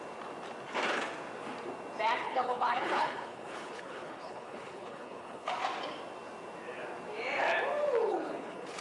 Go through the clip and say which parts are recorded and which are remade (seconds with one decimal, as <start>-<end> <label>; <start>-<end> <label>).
0.0-2.2 recorded; 2.2-5.5 remade; 5.5-8.0 recorded; 8.0-8.8 remade

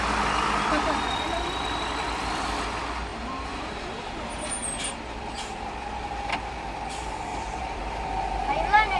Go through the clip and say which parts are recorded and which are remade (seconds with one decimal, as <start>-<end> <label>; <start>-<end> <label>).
0.0-3.1 recorded; 3.1-6.3 remade; 6.3-7.3 recorded; 7.3-8.0 remade; 8.0-9.0 recorded

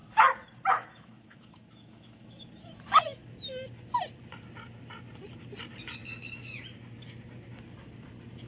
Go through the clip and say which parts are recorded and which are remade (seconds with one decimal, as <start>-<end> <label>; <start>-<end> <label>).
0.0-0.7 recorded; 0.7-3.2 remade; 3.2-8.5 recorded